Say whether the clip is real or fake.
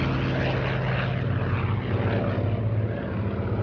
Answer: real